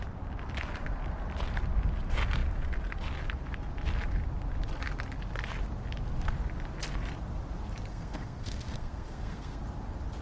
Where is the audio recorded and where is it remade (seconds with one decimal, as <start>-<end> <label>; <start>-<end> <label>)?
0.0-7.9 recorded; 7.9-9.6 remade; 9.6-10.2 recorded